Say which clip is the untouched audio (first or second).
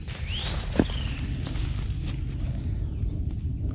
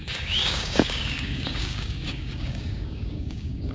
first